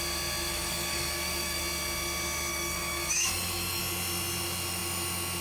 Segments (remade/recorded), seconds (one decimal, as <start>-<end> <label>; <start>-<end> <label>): 0.0-0.5 recorded; 0.5-1.6 remade; 1.6-2.5 recorded; 2.5-3.8 remade; 3.8-5.4 recorded